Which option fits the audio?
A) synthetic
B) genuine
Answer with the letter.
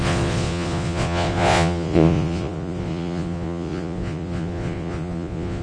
A